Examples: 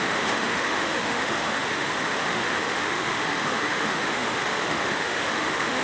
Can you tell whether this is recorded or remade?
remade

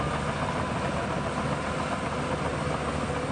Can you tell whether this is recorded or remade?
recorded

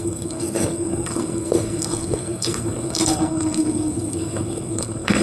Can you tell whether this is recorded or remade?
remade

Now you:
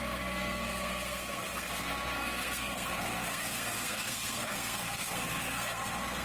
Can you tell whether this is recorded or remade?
remade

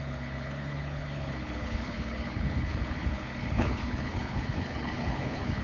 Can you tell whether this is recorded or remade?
remade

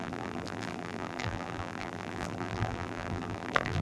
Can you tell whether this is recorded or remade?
remade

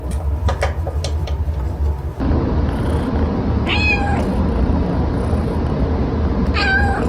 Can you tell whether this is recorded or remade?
recorded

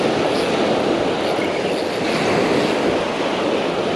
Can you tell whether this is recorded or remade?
recorded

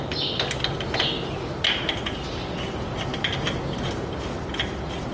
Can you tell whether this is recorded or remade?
recorded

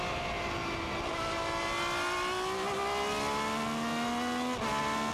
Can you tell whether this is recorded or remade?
recorded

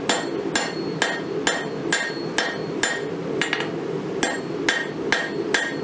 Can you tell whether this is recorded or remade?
recorded